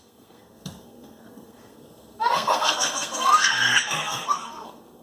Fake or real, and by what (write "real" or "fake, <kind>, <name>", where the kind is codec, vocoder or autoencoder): fake, codec, SNAC